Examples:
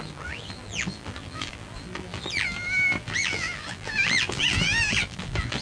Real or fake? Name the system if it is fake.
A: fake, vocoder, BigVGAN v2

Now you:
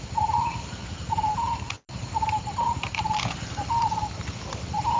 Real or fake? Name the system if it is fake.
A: real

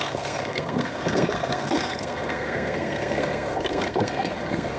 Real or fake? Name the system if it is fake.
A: fake, codec, SNAC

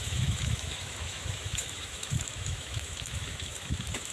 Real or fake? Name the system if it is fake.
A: fake, autoencoder, DAC-VAE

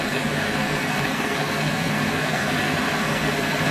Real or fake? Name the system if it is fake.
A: fake, codec, SNAC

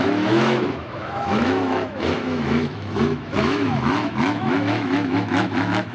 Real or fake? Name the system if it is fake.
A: fake, autoencoder, DAC-VAE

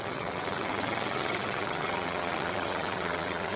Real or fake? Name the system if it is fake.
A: fake, vocoder, WaveNeXt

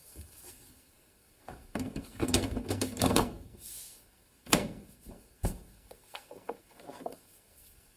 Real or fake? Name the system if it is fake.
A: fake, codec, SNAC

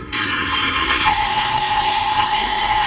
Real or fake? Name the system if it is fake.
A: fake, codec, SNAC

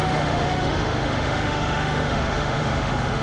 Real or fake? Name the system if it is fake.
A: fake, autoencoder, DAC-VAE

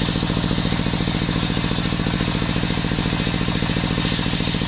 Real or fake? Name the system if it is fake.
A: real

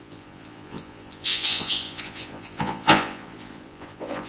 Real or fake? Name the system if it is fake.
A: fake, vocoder, Vocos